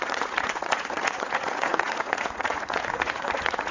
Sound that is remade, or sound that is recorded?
remade